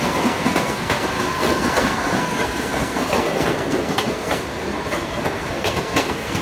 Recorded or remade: remade